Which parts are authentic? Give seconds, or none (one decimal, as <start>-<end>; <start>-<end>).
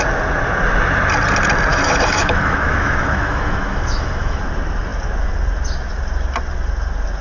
0.0-1.7; 4.4-7.2